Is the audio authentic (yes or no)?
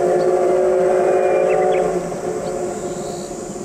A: yes